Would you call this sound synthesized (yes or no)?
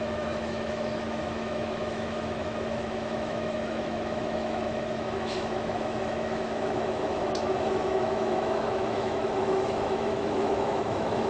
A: yes